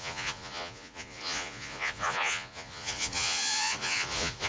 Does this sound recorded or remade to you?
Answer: remade